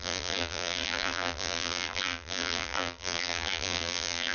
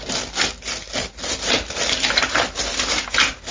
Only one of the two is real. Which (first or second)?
second